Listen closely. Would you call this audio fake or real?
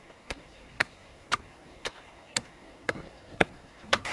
fake